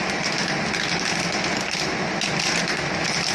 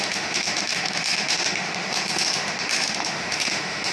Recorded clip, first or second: first